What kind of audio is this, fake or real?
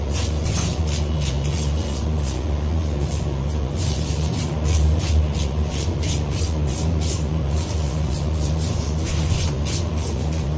fake